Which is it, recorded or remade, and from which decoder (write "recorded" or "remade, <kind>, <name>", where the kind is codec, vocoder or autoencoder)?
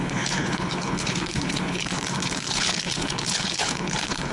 remade, codec, HILCodec